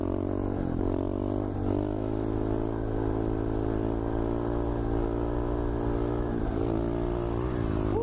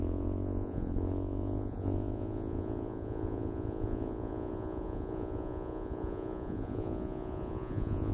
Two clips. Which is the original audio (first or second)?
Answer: first